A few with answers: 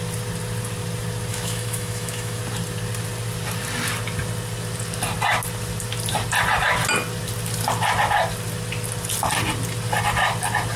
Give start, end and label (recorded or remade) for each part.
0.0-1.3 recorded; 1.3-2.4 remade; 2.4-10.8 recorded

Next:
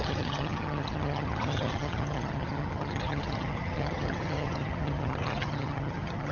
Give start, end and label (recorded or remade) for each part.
0.0-6.3 remade

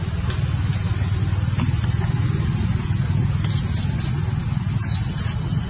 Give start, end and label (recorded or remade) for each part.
0.0-5.7 recorded

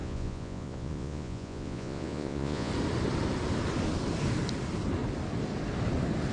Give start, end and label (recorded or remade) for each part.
0.0-2.7 remade; 2.7-6.3 recorded